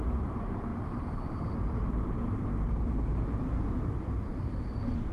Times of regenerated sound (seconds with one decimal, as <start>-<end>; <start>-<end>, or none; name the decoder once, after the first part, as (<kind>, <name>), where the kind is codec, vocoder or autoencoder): 0.0-5.1 (vocoder, BigVGAN v2)

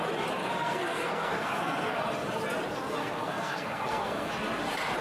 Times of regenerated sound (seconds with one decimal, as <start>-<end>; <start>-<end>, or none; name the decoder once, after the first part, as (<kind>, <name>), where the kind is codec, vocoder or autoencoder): 0.4-2.0 (codec, SNAC); 3.0-4.3